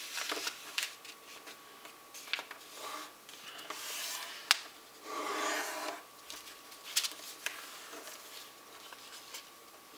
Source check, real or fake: real